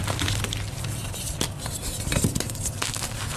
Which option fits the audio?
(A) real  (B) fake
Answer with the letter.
A